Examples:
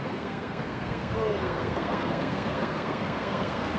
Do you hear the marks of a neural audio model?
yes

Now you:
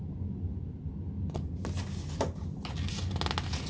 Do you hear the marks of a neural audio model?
no